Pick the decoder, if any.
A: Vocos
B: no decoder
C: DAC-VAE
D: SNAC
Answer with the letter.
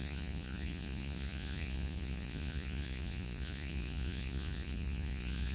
A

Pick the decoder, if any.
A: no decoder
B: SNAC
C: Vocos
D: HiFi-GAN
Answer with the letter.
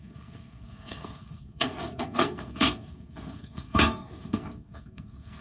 B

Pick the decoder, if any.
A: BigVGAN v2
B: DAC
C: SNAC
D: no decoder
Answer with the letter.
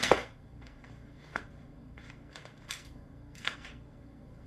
C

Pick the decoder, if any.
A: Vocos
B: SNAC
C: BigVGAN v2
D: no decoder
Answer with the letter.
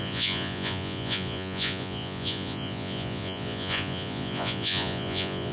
A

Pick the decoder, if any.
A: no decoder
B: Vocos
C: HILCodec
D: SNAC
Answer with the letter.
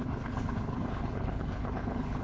C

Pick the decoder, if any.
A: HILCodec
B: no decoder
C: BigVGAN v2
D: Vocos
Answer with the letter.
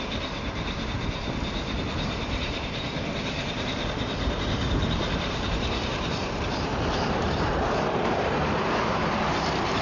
C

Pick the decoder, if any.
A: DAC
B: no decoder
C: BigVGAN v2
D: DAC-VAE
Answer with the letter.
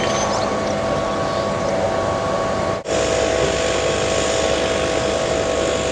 B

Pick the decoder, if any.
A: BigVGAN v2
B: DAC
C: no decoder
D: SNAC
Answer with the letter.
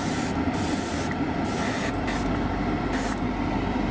C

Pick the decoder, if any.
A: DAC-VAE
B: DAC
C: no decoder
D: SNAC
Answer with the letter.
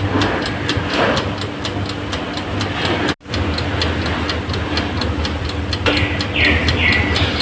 C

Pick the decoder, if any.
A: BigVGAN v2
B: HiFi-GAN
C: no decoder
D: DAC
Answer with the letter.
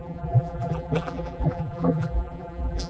A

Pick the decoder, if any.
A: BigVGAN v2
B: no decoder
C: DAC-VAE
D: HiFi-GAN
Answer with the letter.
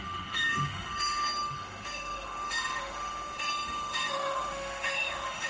C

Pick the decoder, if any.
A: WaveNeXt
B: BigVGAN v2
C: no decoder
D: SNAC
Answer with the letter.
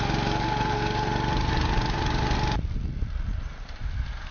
C